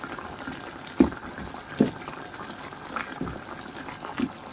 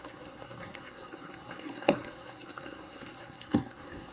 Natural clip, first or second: first